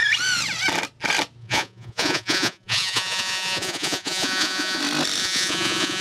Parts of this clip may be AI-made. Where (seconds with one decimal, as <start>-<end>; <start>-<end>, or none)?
1.4-4.8; 5.2-6.0